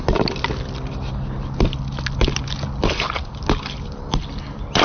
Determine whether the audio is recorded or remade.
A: recorded